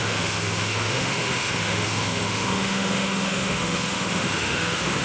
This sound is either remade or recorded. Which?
remade